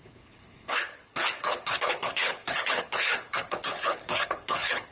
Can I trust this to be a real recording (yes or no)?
no